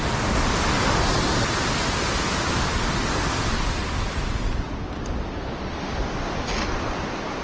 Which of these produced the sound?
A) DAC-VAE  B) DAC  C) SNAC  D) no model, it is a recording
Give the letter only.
D